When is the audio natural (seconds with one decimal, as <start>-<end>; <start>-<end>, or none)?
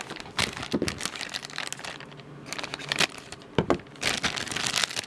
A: 0.0-5.1